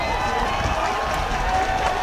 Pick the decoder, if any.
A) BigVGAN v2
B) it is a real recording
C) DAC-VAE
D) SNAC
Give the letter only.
B